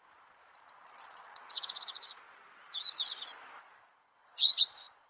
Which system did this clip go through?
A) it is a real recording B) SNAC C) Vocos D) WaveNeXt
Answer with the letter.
C